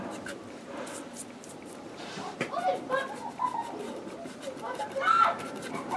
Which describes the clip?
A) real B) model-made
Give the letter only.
B